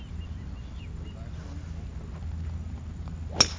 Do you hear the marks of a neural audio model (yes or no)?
no